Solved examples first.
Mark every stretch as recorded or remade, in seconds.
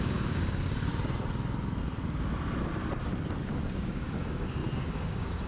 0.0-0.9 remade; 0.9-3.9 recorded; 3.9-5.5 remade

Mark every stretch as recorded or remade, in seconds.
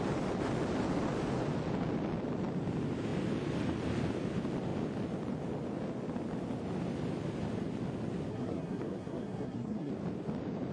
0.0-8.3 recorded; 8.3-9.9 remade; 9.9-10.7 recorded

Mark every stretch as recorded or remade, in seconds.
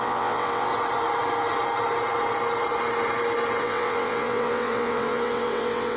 0.0-0.7 remade; 0.7-3.6 recorded; 3.6-6.0 remade